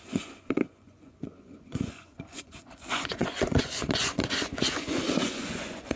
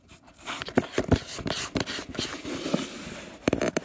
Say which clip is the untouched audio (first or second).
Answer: second